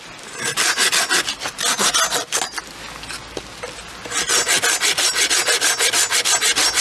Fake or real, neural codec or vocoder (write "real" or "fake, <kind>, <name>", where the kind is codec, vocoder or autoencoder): real